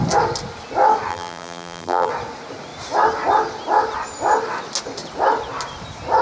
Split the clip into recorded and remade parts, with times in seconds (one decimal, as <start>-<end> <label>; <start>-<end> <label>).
0.0-1.1 recorded; 1.1-2.1 remade; 2.1-6.2 recorded